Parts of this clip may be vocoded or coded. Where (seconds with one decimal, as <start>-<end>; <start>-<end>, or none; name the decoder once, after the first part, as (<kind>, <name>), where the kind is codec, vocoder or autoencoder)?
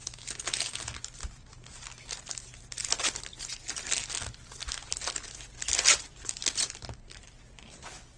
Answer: none